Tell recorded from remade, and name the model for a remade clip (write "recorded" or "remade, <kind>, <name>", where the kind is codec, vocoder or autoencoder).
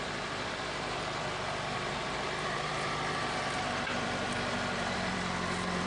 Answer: remade, vocoder, BigVGAN v2